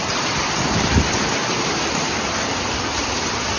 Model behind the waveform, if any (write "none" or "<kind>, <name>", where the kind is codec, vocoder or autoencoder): vocoder, BigVGAN v2